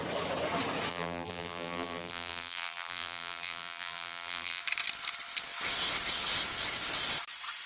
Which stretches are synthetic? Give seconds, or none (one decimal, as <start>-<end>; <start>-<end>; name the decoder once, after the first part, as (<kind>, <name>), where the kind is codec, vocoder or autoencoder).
0.9-4.6 (vocoder, BigVGAN v2)